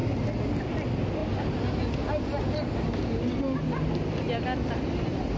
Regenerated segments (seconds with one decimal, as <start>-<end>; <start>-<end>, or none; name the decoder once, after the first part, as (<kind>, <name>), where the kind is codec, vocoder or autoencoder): none